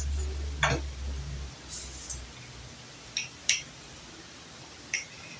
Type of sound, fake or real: real